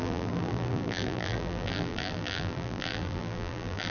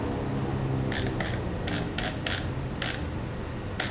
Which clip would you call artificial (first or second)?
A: first